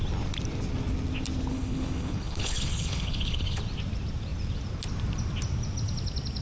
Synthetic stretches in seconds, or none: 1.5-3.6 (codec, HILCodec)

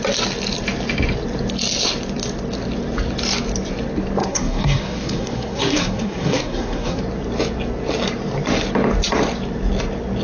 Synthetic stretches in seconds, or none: 4.2-7.0 (codec, SNAC)